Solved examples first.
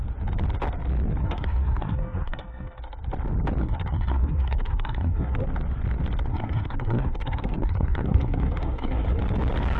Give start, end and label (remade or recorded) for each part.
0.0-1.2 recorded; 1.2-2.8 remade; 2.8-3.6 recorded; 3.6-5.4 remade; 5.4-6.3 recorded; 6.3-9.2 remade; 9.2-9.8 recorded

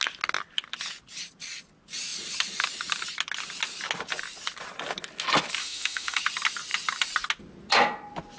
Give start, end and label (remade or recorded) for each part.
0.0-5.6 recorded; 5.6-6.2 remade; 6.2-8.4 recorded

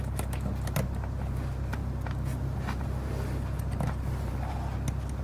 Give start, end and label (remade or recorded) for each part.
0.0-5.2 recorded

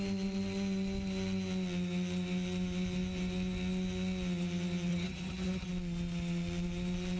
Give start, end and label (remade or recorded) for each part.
0.0-4.9 recorded; 4.9-5.7 remade; 5.7-7.2 recorded

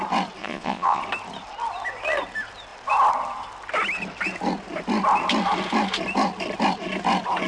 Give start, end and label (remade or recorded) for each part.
0.0-0.4 recorded; 0.4-1.0 remade; 1.0-7.5 recorded